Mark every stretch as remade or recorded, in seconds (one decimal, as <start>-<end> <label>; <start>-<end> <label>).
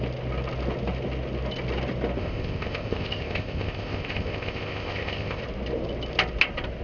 0.0-2.2 recorded; 2.2-5.4 remade; 5.4-6.8 recorded